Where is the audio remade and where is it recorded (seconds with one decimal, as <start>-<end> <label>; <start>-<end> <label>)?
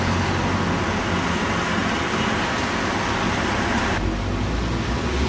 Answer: 0.0-5.3 recorded